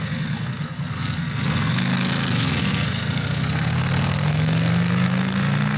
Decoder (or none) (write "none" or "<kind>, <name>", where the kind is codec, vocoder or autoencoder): codec, SNAC